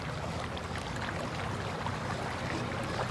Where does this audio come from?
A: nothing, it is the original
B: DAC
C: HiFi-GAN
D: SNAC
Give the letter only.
A